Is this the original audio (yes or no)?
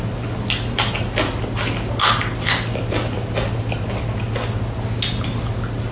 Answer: yes